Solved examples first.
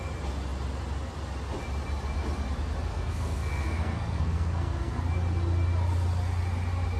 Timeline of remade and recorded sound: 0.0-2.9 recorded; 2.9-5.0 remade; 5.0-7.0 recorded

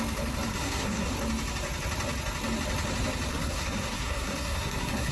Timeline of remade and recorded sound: 0.0-0.5 recorded; 0.5-1.1 remade; 1.1-3.3 recorded; 3.3-5.1 remade

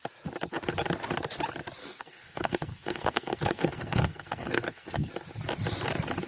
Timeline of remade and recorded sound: 0.0-1.8 recorded; 1.8-5.1 remade; 5.1-6.3 recorded

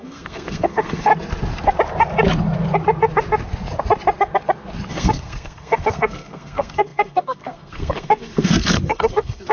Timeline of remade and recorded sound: 0.0-1.1 remade; 1.1-4.9 recorded; 4.9-9.5 remade

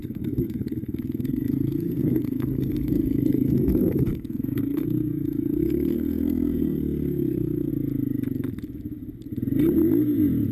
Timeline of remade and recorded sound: 0.0-7.7 remade; 7.7-10.5 recorded